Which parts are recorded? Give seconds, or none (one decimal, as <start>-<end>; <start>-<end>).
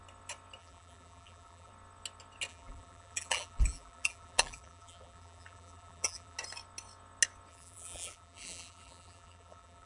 0.0-0.6; 1.7-2.5; 6.4-7.5